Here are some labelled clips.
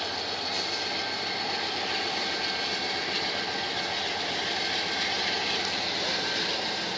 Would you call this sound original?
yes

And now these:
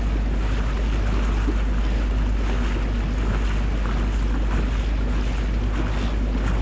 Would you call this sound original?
yes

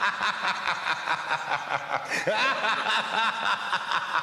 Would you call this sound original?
yes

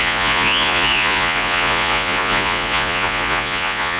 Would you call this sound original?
no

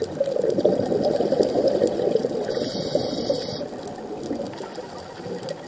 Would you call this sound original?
yes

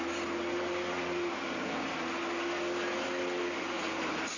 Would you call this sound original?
yes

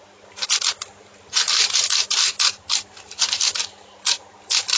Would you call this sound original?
yes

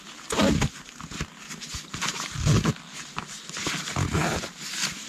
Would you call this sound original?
yes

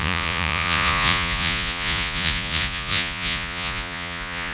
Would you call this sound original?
no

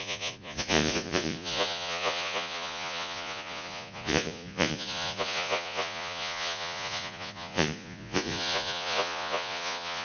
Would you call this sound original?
no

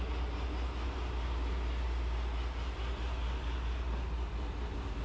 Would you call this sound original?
yes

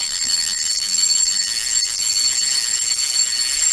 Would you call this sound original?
yes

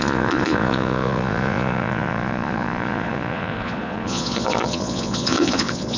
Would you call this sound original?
no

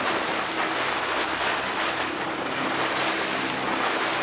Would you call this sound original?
yes